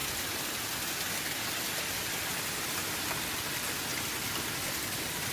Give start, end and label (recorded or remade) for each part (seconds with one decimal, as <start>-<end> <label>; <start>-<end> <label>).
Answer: 0.0-5.3 recorded